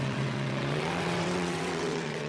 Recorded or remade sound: remade